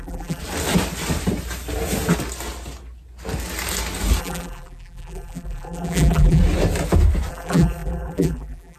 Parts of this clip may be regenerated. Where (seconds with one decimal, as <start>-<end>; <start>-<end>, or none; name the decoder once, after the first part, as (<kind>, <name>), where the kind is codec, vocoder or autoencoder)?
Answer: 0.0-0.4 (vocoder, BigVGAN v2); 4.2-6.4; 7.3-8.8